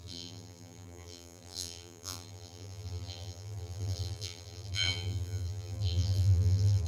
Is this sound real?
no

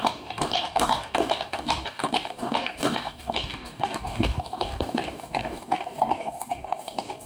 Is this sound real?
no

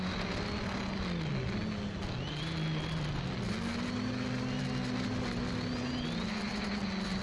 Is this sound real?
yes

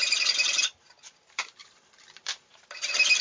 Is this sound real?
no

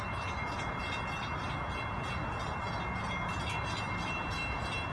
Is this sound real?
yes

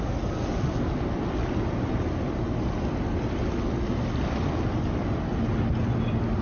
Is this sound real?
yes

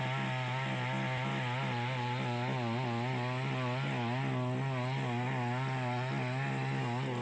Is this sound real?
yes